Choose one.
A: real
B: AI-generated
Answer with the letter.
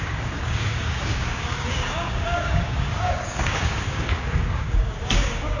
B